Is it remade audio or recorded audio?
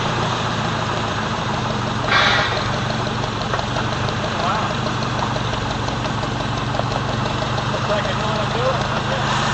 remade